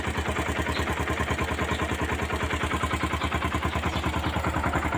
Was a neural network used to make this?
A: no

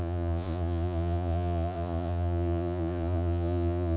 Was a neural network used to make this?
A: yes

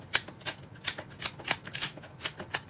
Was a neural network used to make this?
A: no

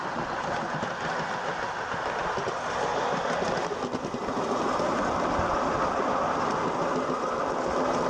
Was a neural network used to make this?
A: no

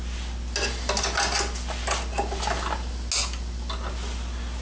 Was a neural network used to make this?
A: no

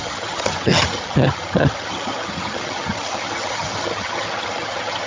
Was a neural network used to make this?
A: yes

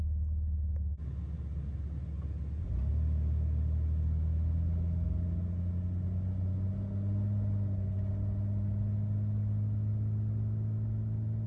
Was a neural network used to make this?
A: no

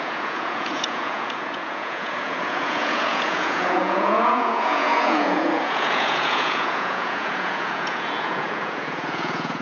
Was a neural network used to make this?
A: yes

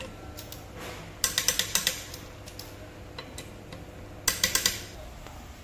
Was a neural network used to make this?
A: no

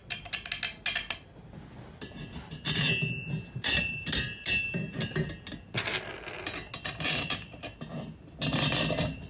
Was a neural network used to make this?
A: no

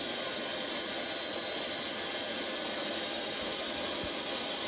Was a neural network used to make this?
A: no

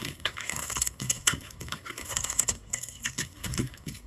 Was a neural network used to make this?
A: yes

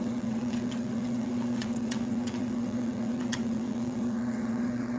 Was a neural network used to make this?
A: yes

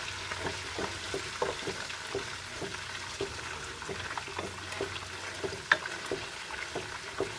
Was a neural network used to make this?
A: no